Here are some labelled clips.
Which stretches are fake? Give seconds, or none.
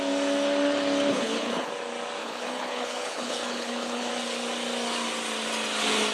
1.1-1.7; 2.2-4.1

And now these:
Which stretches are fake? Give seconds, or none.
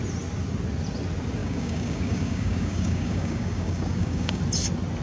1.4-4.4